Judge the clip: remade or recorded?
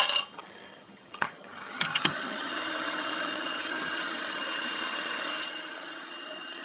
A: remade